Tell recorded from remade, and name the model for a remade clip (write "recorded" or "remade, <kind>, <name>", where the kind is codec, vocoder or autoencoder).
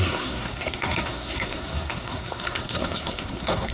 remade, codec, SNAC